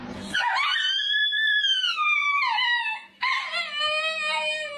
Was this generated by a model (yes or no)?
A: no